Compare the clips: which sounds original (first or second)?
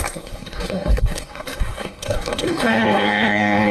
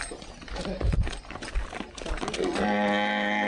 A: second